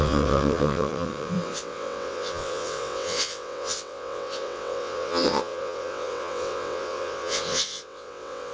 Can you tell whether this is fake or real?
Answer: fake